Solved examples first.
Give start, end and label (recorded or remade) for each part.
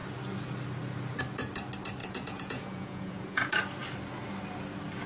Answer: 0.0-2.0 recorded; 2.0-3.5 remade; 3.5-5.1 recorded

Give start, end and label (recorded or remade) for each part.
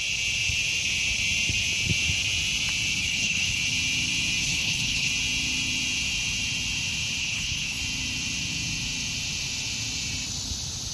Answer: 0.0-3.0 recorded; 3.0-3.6 remade; 3.6-4.4 recorded; 4.4-5.1 remade; 5.1-7.2 recorded; 7.2-7.8 remade; 7.8-10.9 recorded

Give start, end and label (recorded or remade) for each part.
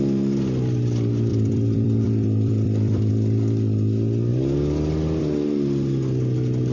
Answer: 0.0-1.3 recorded; 1.3-3.1 remade; 3.1-6.7 recorded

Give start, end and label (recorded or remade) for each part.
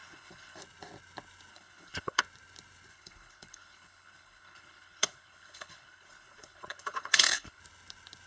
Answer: 0.0-0.6 remade; 0.6-1.5 recorded; 1.5-2.2 remade; 2.2-2.9 recorded; 2.9-7.6 remade; 7.6-8.3 recorded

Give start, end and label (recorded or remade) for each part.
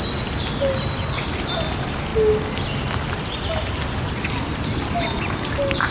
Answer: 0.0-5.9 recorded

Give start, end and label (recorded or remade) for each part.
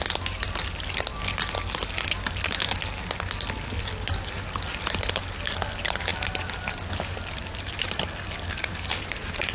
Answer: 0.0-9.5 recorded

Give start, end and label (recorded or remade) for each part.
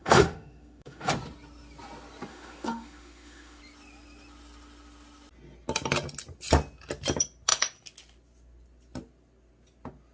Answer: 0.0-1.1 remade; 1.1-2.3 recorded; 2.3-3.6 remade; 3.6-10.1 recorded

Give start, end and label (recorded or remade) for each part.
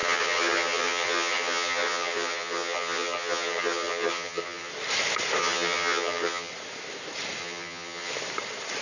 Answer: 0.0-4.7 remade; 4.7-5.4 recorded; 5.4-6.5 remade; 6.5-7.4 recorded; 7.4-8.1 remade; 8.1-8.8 recorded